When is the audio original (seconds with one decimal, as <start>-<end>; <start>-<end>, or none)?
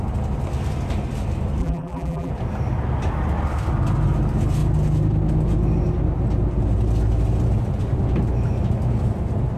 0.0-1.6; 2.3-9.6